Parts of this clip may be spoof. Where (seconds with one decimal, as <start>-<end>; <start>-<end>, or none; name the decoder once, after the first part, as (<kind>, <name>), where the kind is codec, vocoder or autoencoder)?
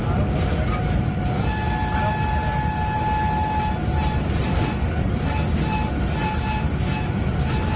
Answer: none